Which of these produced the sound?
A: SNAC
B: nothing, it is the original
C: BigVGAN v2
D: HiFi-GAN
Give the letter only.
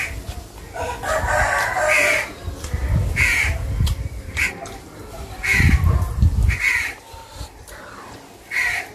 C